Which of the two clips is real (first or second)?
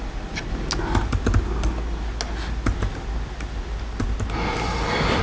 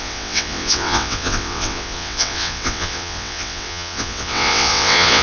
first